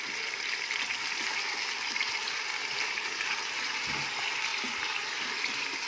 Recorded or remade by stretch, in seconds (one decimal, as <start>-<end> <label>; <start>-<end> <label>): 0.0-5.9 recorded